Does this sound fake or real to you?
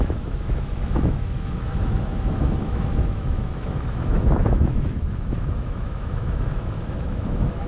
fake